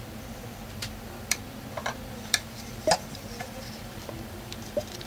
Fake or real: fake